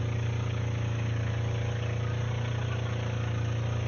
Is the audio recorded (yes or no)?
yes